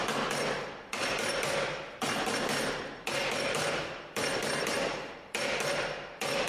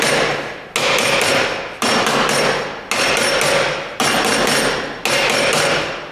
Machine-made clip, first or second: first